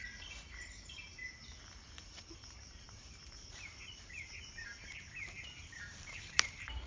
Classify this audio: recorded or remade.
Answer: remade